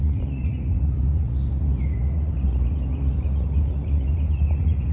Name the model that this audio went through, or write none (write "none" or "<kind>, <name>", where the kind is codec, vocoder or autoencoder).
vocoder, Vocos